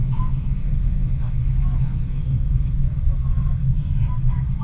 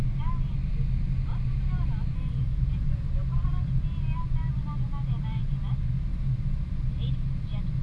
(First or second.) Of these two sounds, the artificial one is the first